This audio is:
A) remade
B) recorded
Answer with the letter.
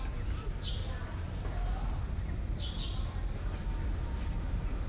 B